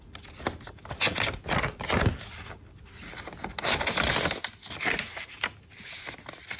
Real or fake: real